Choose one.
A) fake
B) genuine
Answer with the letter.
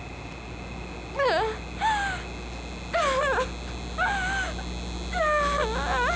B